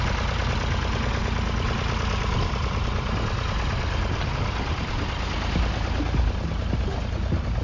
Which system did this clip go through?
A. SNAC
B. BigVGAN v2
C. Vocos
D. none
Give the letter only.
D